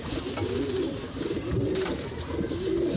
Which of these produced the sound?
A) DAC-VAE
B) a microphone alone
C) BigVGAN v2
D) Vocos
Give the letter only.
B